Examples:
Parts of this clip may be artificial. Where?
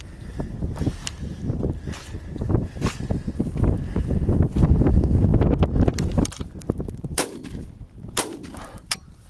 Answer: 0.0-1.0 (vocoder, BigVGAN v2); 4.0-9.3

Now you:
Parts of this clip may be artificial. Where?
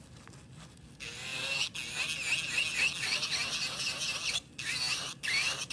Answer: none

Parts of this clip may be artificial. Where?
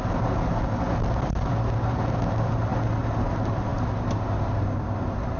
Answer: none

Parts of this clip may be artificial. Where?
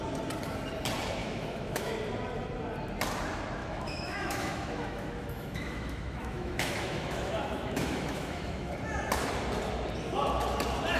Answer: 1.2-1.9 (autoencoder, DAC-VAE); 3.6-8.7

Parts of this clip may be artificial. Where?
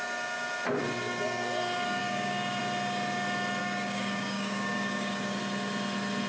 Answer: 2.0-2.6 (codec, DAC); 3.6-5.4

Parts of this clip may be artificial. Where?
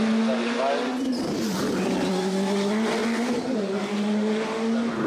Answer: 1.1-1.8 (vocoder, BigVGAN v2)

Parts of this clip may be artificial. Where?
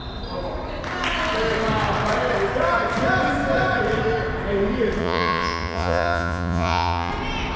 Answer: 5.0-7.1 (vocoder, Vocos)